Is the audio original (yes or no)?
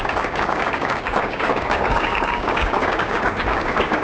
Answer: no